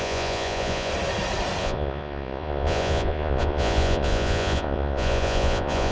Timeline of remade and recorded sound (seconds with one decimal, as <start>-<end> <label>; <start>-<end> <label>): 0.0-0.9 remade; 0.9-1.6 recorded; 1.6-5.9 remade